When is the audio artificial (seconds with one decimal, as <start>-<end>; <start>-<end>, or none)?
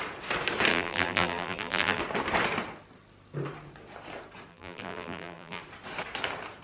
0.7-2.0; 4.5-5.6